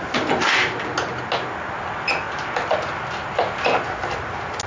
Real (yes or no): yes